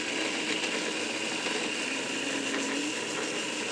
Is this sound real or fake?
real